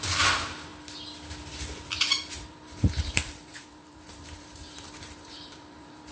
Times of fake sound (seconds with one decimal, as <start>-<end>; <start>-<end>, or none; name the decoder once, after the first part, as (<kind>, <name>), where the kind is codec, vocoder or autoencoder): 0.0-0.7 (vocoder, BigVGAN v2); 1.5-6.1